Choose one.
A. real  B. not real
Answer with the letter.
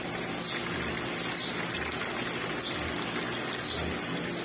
A